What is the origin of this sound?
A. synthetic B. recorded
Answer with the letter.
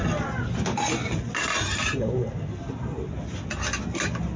B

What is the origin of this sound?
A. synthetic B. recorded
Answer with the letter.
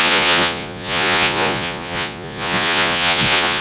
A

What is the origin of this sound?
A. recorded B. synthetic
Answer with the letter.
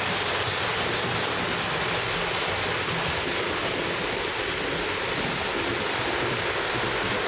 A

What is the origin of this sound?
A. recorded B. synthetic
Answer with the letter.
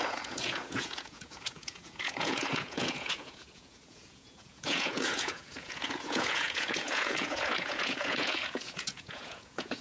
B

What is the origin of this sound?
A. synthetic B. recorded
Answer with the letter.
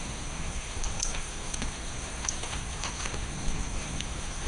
A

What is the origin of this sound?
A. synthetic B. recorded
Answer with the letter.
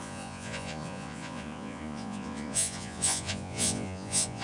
A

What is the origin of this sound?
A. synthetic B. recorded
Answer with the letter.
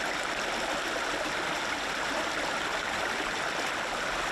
B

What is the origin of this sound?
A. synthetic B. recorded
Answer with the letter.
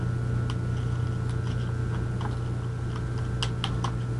B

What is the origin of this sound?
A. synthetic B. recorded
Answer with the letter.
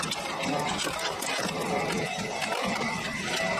A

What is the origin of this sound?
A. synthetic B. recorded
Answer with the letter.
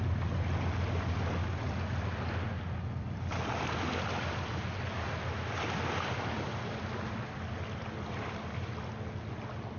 B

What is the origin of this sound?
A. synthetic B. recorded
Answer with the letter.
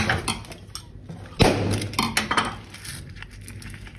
B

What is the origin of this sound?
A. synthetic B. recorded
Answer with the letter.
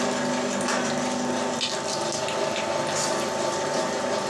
B